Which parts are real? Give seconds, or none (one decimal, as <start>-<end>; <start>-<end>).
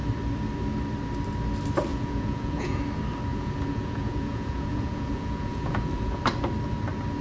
0.0-1.9; 2.8-3.3; 6.2-7.2